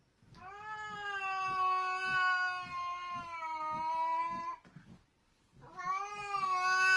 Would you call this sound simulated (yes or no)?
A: no